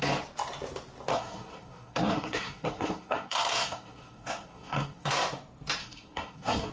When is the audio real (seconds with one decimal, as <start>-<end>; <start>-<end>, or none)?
0.0-1.1; 5.1-5.8